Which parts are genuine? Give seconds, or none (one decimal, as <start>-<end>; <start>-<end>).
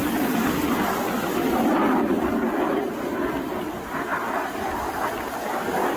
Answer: 0.0-6.0